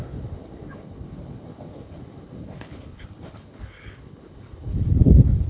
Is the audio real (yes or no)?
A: no